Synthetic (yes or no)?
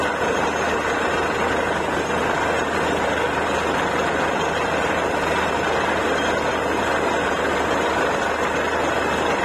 no